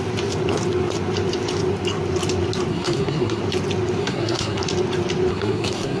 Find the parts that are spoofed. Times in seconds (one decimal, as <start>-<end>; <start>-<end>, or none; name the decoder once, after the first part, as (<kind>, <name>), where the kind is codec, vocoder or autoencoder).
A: 2.7-3.4 (codec, SNAC); 4.0-4.6; 5.3-6.0